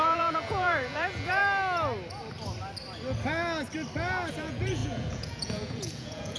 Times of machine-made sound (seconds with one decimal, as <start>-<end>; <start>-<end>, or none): 0.0-1.4; 4.3-6.4